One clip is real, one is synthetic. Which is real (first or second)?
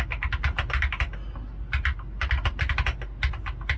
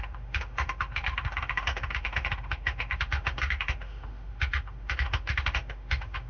first